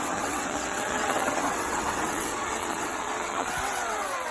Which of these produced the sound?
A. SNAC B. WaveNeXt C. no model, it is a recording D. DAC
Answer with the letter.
B